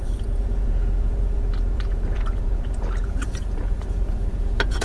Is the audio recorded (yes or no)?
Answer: no